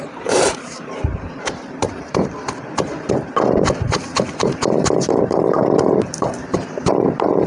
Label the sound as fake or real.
fake